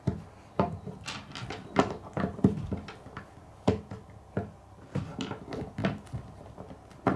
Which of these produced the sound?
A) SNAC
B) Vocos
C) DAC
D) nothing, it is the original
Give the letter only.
D